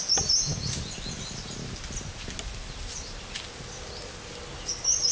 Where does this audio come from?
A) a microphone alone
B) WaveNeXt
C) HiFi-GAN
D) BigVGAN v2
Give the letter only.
A